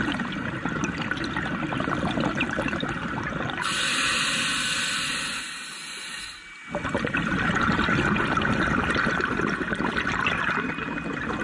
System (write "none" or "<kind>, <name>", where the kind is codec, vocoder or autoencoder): none